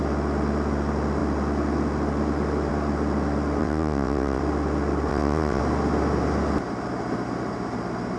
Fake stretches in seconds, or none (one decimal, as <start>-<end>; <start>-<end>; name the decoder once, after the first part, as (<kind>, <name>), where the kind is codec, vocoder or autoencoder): 3.6-4.4 (vocoder, WaveNeXt); 5.1-5.6

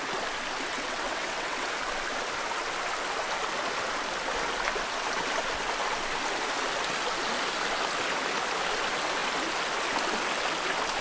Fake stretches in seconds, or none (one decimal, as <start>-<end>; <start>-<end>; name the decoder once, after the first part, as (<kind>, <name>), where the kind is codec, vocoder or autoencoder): 0.7-1.7 (vocoder, WaveNeXt)

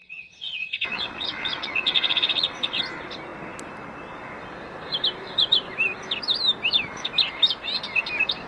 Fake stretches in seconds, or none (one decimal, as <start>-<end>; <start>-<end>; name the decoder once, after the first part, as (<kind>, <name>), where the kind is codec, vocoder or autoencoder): 0.0-2.8 (vocoder, WaveNeXt)

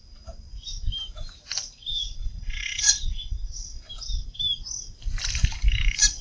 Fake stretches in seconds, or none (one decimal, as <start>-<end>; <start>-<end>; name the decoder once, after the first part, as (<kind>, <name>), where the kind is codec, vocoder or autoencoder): 1.9-3.8 (vocoder, WaveNeXt)

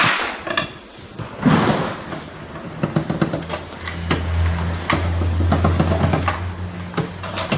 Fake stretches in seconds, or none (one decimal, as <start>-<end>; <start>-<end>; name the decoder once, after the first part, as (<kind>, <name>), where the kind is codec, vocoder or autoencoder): none

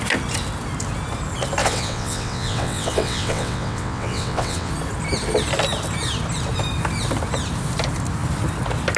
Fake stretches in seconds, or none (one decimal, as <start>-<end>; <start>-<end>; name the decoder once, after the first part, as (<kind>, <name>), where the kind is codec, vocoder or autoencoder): 1.6-4.7 (vocoder, WaveNeXt)

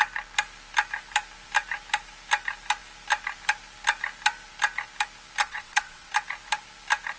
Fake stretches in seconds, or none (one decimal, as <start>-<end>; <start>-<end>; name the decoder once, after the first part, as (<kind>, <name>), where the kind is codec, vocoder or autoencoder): 5.4-6.1 (vocoder, WaveNeXt)